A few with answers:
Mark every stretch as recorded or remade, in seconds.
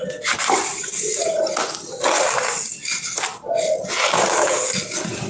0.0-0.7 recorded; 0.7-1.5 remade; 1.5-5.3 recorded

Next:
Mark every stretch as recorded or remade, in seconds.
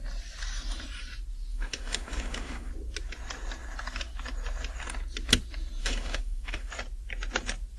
0.0-1.5 recorded; 1.5-2.7 remade; 2.7-5.8 recorded; 5.8-6.7 remade; 6.7-7.8 recorded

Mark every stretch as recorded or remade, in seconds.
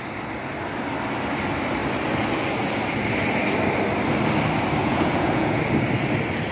0.0-4.8 recorded; 4.8-5.6 remade; 5.6-6.5 recorded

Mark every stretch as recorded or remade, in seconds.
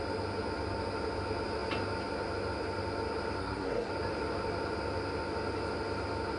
0.0-3.4 recorded; 3.4-3.9 remade; 3.9-6.4 recorded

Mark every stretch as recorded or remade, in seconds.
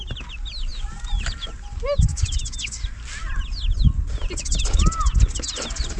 0.0-6.0 recorded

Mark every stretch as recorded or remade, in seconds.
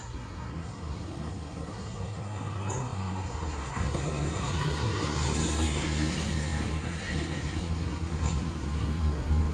0.0-9.5 remade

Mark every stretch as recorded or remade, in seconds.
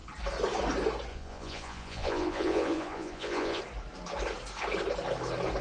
0.0-1.1 recorded; 1.1-3.6 remade; 3.6-5.6 recorded